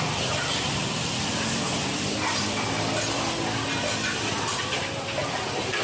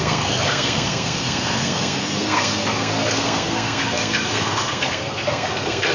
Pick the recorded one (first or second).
first